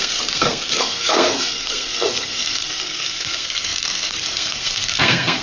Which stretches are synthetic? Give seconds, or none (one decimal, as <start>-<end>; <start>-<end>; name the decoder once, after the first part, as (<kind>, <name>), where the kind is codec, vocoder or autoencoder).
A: 0.0-5.4 (codec, SNAC)